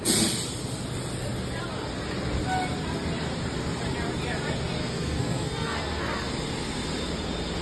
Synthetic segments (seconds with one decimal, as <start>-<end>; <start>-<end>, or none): 4.8-6.3